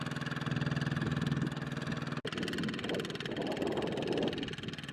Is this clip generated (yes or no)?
no